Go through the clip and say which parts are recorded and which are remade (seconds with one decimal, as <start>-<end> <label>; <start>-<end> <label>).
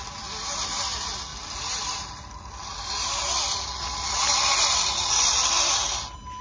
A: 0.0-6.4 recorded